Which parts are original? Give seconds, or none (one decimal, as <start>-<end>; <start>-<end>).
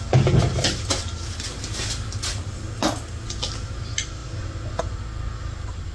0.0-5.9